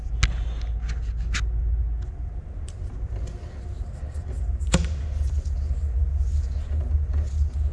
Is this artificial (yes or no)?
no